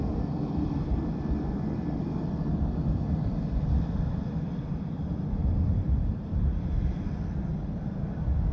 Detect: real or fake real